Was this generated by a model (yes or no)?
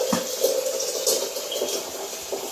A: no